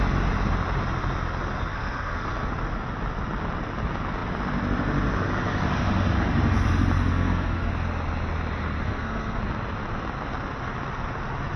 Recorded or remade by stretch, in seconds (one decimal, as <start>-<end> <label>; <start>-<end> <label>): 0.0-1.7 recorded; 1.7-2.5 remade; 2.5-7.1 recorded; 7.1-7.7 remade; 7.7-8.9 recorded; 8.9-9.4 remade; 9.4-11.6 recorded